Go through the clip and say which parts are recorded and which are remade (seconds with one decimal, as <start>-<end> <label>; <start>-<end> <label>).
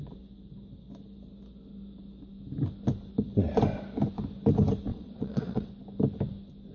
0.0-4.9 recorded; 4.9-5.7 remade; 5.7-6.7 recorded